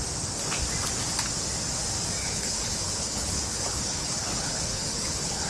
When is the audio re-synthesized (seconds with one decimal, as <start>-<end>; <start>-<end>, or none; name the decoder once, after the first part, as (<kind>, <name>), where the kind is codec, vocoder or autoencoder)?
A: 2.2-5.5 (codec, HILCodec)